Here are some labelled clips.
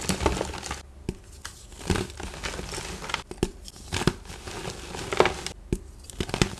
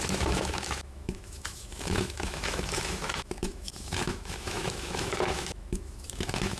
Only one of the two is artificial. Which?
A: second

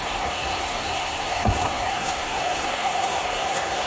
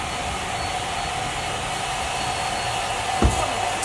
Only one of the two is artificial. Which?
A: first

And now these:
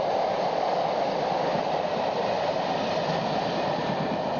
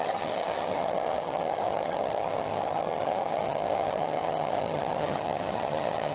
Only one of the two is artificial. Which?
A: second